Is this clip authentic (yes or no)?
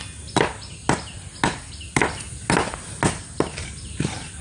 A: yes